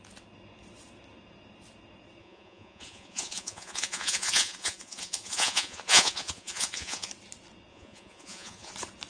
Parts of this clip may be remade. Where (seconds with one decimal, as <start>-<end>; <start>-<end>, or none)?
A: 2.2-7.1; 7.7-8.7